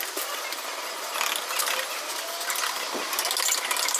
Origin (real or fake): real